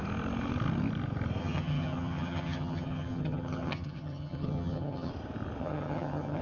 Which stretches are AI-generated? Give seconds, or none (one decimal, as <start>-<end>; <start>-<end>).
1.4-5.1; 5.6-6.4

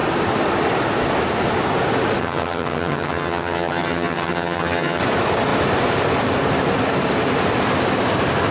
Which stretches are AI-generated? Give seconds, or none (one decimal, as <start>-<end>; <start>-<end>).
2.2-5.0

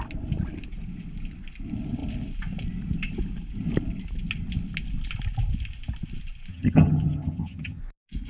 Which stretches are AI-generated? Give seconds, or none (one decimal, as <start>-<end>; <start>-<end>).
6.5-7.8